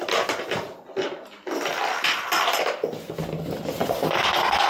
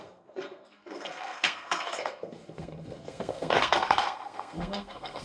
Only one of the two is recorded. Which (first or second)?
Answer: first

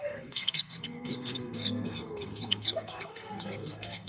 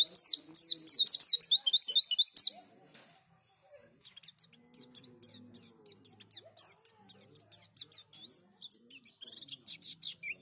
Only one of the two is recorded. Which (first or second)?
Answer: second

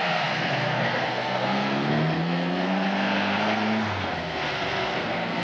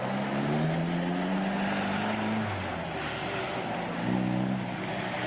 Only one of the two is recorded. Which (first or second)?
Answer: second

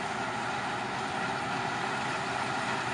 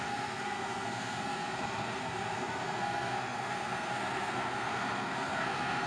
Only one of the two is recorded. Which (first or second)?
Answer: first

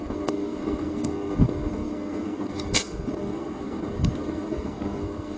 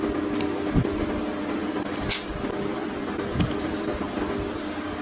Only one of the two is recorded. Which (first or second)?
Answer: second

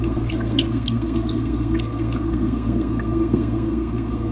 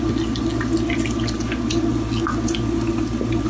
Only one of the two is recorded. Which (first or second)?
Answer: second